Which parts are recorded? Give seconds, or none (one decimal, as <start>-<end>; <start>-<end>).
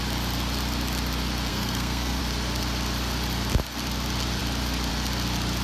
0.0-1.5; 2.2-5.6